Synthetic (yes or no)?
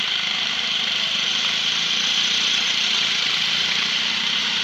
yes